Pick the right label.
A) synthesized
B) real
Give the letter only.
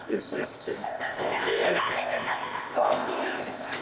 A